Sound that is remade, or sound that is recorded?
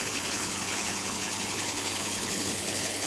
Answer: remade